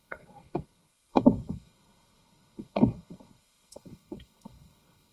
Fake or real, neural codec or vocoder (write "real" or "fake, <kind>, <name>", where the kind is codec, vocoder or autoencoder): fake, codec, SNAC